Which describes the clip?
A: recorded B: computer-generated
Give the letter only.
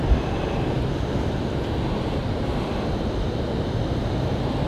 A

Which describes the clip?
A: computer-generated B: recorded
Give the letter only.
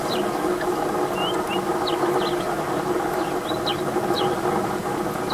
B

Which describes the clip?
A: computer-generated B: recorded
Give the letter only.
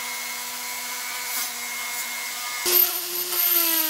B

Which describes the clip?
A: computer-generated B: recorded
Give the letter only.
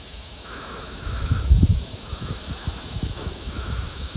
A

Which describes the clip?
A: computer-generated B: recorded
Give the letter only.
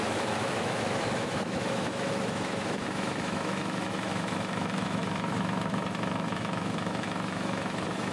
A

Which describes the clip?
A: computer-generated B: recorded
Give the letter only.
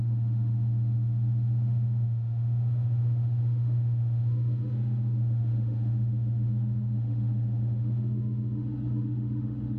A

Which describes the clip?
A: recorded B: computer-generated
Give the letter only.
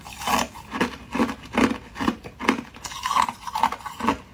A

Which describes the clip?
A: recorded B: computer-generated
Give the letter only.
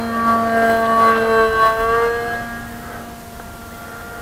A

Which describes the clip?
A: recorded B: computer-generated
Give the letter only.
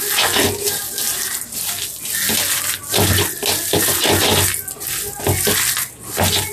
A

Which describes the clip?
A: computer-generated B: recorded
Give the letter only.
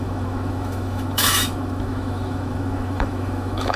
A